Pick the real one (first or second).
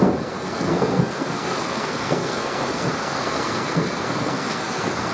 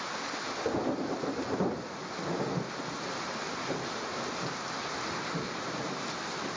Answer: second